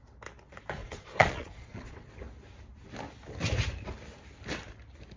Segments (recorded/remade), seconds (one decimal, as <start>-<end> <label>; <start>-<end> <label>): 0.0-0.8 recorded; 0.8-2.1 remade; 2.1-5.2 recorded